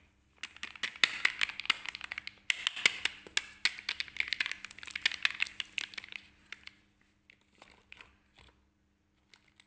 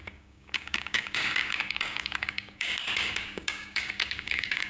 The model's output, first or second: second